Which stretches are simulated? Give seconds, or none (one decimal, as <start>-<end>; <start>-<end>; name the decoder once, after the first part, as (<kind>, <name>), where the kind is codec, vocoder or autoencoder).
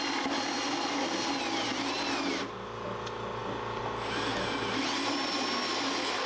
none